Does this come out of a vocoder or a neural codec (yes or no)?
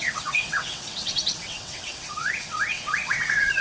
yes